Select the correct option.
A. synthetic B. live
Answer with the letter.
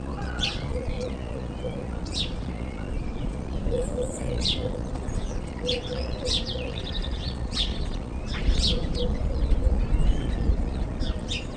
A